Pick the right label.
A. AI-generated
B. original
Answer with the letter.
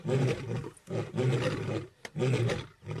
B